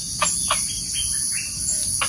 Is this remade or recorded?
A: recorded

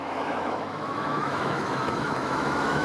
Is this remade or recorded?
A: remade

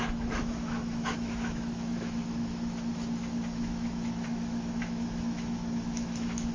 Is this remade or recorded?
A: remade